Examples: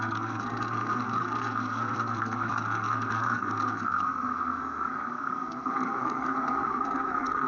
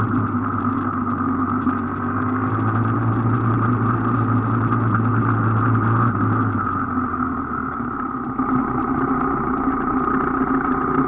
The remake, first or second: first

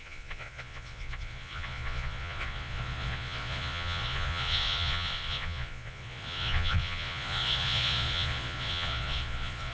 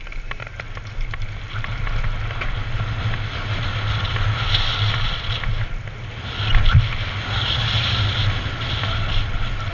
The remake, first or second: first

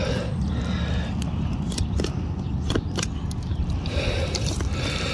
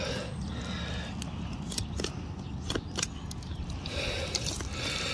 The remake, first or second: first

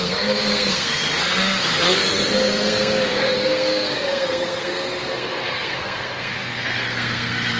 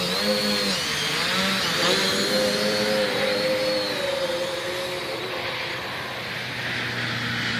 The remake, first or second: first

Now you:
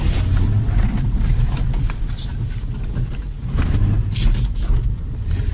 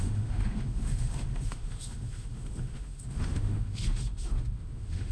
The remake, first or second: second